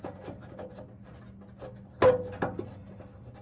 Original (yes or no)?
yes